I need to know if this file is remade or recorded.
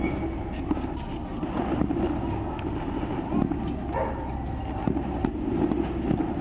recorded